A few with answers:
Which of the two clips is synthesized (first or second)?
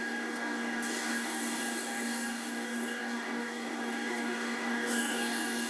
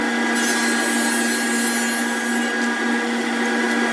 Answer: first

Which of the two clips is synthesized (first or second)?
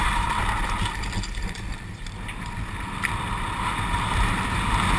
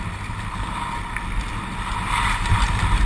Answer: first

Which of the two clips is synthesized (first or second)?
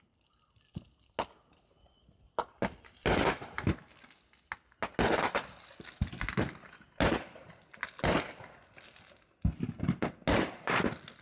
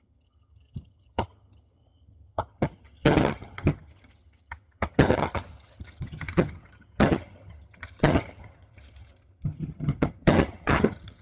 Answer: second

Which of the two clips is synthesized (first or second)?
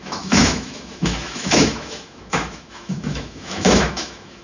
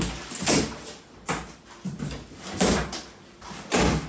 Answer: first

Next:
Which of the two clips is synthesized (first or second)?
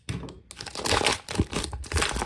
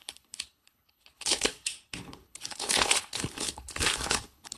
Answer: second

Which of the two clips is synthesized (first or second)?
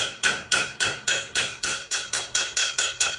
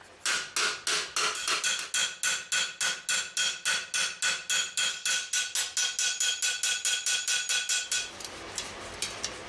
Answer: first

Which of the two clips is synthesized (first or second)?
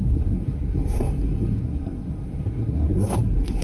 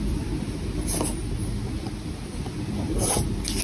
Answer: first